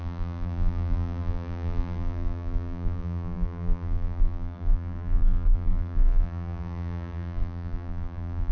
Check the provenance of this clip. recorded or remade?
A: remade